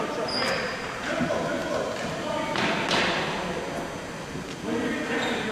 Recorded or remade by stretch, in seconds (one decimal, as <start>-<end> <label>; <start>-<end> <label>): 0.0-1.6 remade; 1.6-4.0 recorded; 4.0-5.5 remade